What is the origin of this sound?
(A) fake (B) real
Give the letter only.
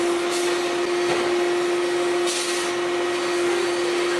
B